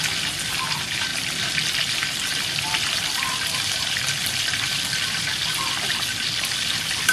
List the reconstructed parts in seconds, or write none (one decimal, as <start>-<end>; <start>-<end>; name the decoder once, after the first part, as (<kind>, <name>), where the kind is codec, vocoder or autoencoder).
1.1-5.4 (vocoder, BigVGAN v2)